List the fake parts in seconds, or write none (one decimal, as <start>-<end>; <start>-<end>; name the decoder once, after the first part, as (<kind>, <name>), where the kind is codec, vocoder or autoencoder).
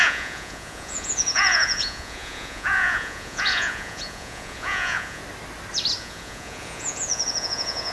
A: 0.0-5.2 (vocoder, Vocos); 6.0-7.9